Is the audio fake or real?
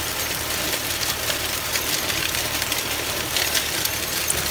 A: fake